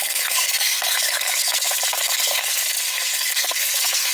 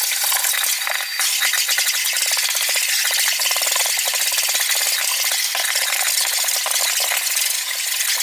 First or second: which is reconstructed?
first